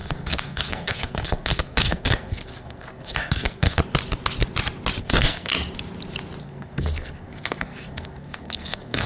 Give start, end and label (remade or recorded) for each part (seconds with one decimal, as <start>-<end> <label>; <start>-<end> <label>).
0.0-3.8 remade; 3.8-5.0 recorded; 5.0-5.5 remade; 5.5-6.4 recorded; 6.4-9.1 remade